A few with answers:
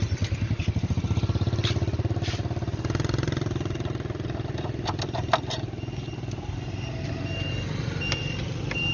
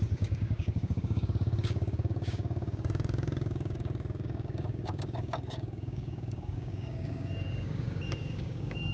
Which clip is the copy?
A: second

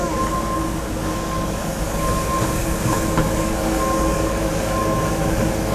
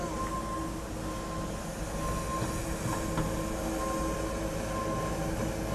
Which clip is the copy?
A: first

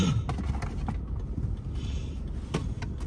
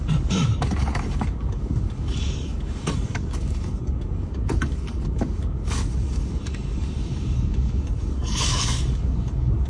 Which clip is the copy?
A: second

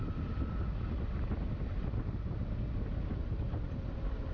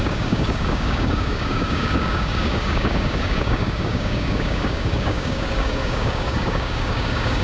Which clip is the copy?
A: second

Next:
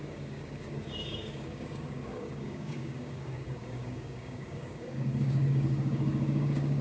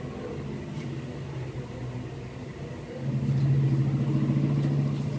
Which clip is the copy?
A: first